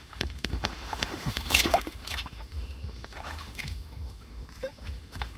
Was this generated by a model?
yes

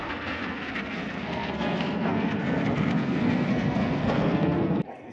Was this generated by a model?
yes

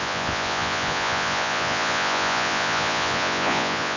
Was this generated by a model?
yes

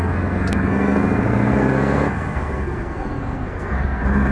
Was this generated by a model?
yes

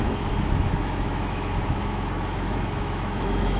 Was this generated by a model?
yes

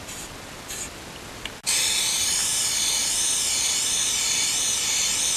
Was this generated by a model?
no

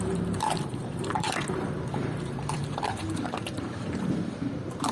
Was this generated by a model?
yes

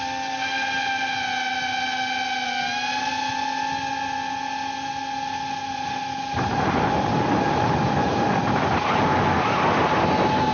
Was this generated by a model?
no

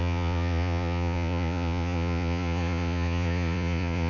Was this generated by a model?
yes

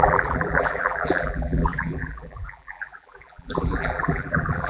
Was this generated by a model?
yes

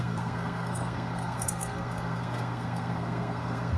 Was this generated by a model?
yes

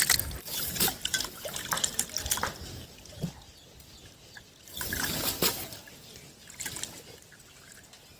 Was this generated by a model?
no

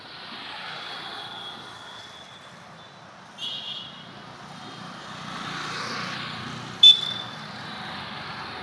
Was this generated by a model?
no